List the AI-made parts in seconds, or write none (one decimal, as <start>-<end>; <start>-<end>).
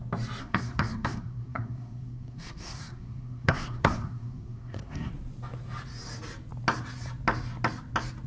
0.4-5.1